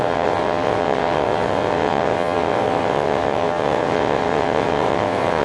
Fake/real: fake